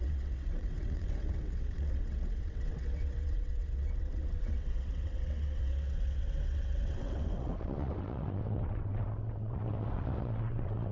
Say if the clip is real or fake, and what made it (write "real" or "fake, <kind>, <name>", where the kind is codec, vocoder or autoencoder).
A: fake, vocoder, WaveNeXt